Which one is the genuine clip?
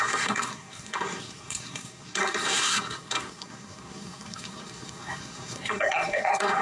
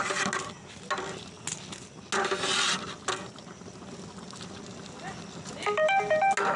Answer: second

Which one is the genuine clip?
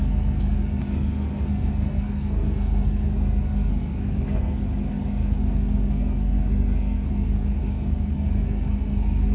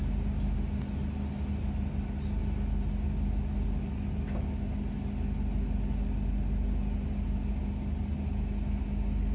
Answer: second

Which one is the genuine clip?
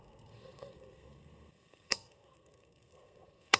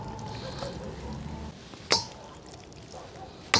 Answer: second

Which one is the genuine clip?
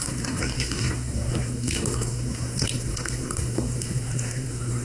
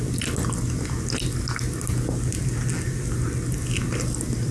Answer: second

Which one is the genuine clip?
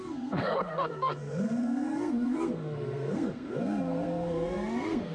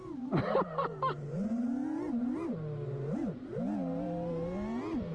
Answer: second